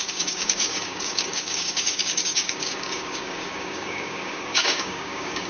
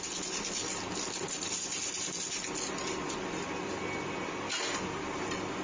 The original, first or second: second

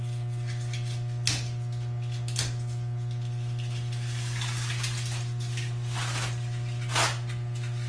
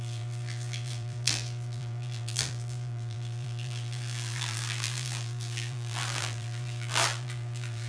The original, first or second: first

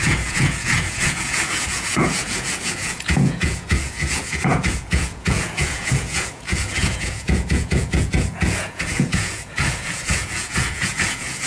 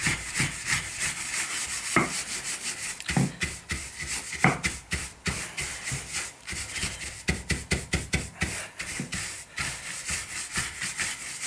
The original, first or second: second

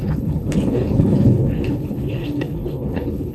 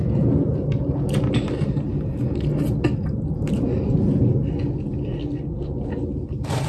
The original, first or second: second